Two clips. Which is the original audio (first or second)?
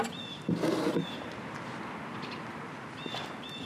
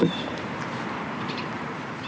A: first